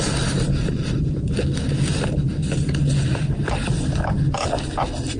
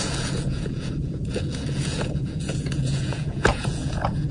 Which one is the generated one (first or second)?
second